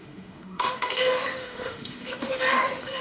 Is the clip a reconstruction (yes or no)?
yes